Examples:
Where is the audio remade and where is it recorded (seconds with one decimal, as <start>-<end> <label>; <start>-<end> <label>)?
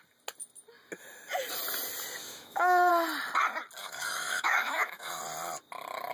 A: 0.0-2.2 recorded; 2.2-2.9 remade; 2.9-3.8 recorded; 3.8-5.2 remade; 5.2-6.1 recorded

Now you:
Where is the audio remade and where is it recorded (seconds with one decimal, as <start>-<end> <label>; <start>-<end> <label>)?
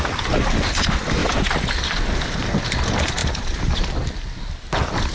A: 0.0-5.1 recorded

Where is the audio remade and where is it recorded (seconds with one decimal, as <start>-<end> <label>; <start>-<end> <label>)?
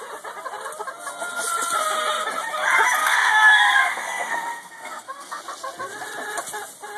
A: 0.0-3.0 recorded; 3.0-5.4 remade; 5.4-7.0 recorded